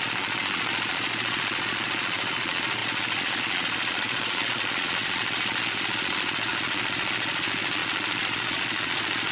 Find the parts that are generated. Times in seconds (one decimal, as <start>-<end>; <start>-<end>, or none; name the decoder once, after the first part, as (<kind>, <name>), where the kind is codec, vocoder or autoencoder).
0.0-9.3 (vocoder, Vocos)